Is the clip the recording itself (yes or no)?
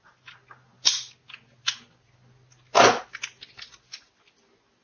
yes